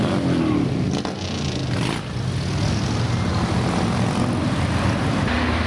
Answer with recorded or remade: recorded